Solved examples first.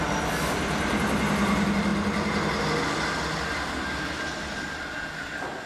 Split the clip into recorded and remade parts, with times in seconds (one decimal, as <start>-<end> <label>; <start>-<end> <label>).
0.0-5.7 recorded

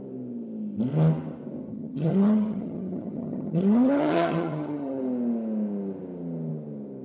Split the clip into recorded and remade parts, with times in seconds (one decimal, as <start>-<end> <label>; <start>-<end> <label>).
0.0-1.7 recorded; 1.7-5.0 remade; 5.0-7.0 recorded

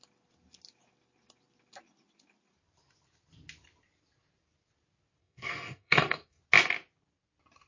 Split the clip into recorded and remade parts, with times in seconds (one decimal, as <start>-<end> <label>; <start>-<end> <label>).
0.0-5.2 recorded; 5.2-6.4 remade; 6.4-7.7 recorded

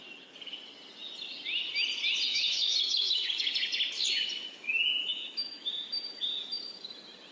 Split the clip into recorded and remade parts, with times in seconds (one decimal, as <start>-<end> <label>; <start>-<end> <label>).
0.0-2.3 recorded; 2.3-3.5 remade; 3.5-5.0 recorded; 5.0-5.9 remade; 5.9-7.3 recorded

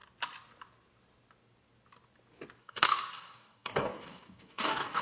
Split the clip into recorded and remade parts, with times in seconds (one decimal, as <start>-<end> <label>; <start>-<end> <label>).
0.0-2.6 recorded; 2.6-5.0 remade

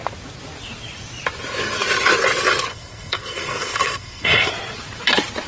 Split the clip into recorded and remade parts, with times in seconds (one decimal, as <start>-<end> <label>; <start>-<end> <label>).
0.0-2.7 recorded; 2.7-4.5 remade; 4.5-5.5 recorded